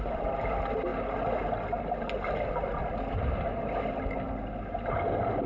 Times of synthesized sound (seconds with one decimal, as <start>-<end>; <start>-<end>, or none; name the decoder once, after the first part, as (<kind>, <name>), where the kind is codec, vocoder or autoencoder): none